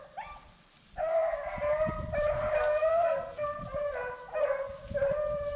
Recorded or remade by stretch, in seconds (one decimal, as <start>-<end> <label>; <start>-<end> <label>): 0.0-2.9 recorded; 2.9-3.6 remade; 3.6-5.6 recorded